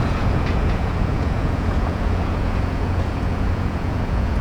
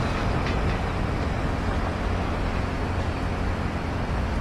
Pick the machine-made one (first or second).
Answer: first